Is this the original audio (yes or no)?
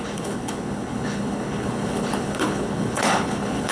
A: no